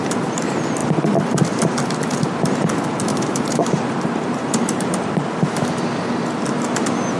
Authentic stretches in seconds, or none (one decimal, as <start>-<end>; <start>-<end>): 0.0-3.1; 5.1-7.2